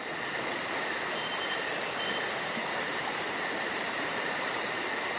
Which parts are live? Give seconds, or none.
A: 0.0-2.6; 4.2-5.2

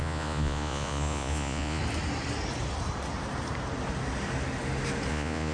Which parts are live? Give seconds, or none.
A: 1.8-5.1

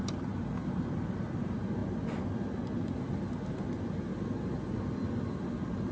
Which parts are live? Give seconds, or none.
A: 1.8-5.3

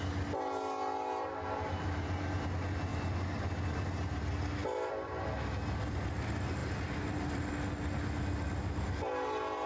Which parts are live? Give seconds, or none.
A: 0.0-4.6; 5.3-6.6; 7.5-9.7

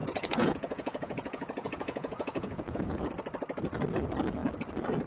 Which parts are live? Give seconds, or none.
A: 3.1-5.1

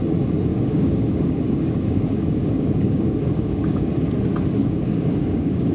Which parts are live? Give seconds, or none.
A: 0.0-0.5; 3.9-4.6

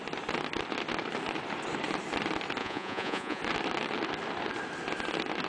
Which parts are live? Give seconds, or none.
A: 0.0-2.6; 3.4-5.5

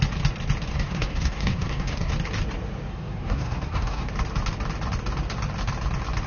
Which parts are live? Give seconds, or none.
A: 0.0-0.7; 2.1-2.9; 4.1-6.3